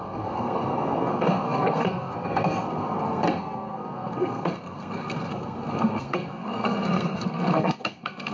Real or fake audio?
fake